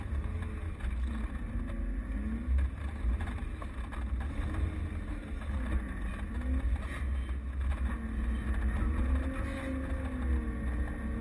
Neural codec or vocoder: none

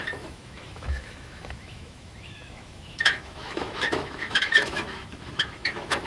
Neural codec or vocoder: autoencoder, DAC-VAE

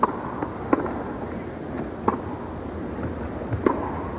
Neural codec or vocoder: none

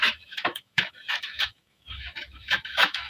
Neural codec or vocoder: autoencoder, DAC-VAE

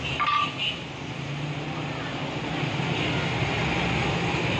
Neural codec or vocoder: none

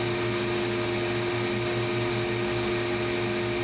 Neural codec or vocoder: none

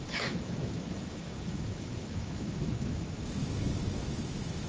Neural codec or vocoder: autoencoder, DAC-VAE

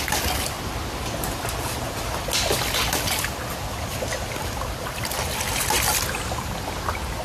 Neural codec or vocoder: none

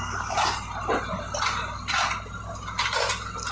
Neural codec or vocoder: none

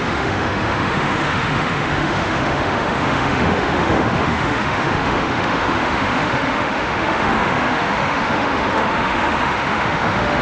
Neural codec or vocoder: autoencoder, DAC-VAE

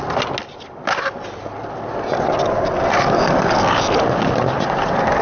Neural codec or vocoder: none